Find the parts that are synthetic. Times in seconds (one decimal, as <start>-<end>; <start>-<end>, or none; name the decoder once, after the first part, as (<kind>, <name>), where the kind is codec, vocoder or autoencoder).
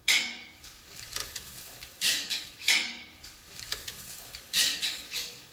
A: 0.0-5.5 (codec, DAC)